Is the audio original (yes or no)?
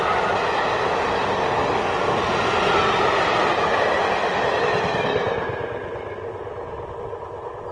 yes